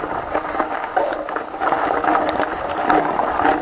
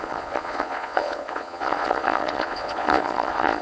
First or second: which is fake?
second